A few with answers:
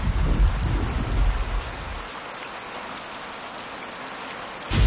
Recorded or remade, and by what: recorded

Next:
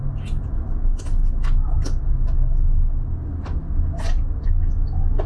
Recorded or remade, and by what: recorded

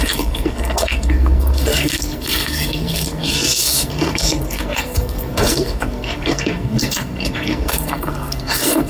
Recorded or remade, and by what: remade, codec, SNAC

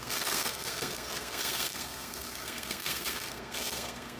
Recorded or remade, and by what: remade, codec, SNAC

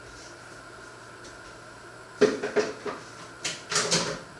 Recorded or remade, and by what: recorded